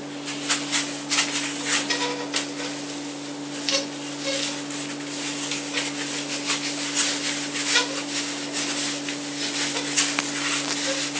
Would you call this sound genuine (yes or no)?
yes